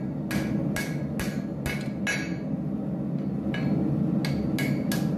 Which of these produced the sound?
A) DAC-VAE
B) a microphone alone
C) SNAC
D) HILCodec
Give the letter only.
B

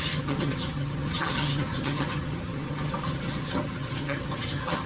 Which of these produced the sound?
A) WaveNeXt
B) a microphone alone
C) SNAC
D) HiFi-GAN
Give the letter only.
D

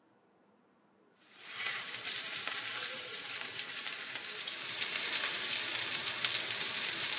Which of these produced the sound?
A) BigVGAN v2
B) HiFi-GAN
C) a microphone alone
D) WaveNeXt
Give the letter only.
A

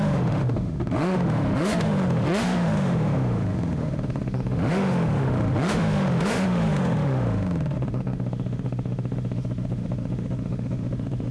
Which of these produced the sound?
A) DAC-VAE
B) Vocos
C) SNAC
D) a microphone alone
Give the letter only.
A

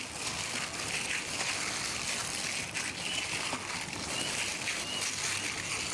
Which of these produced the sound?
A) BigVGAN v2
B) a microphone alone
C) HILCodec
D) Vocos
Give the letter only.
B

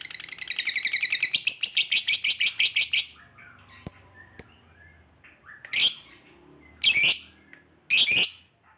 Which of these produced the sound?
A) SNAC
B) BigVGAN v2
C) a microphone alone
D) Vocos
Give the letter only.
C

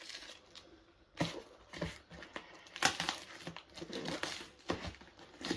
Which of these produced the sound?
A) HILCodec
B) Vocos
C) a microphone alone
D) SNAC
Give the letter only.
C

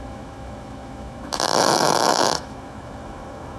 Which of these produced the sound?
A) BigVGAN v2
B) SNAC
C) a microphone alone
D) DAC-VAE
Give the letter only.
D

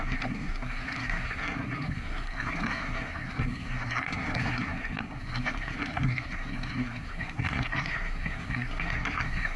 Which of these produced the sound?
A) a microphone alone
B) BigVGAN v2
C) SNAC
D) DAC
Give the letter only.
C